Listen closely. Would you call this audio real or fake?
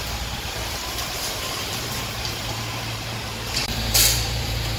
fake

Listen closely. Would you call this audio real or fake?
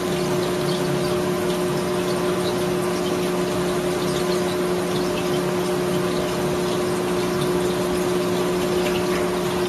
real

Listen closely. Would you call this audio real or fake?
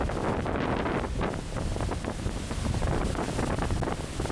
real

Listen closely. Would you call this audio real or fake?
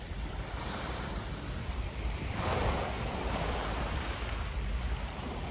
fake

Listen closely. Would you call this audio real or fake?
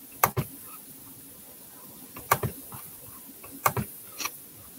real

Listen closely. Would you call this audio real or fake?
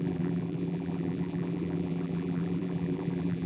fake